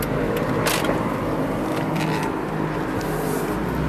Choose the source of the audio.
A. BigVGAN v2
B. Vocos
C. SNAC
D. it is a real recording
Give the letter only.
D